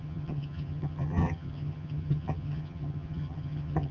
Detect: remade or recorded remade